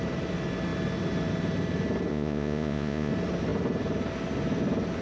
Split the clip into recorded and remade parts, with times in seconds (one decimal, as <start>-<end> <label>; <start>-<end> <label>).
0.0-2.1 recorded; 2.1-3.1 remade; 3.1-5.0 recorded